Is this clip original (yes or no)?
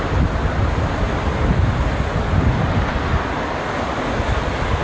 yes